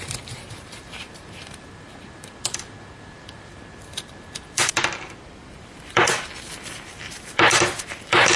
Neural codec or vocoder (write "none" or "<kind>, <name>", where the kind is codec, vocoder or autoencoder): vocoder, BigVGAN v2